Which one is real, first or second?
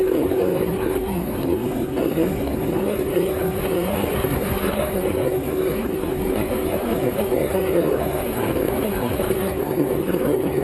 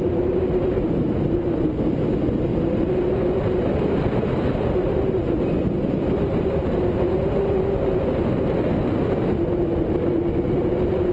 second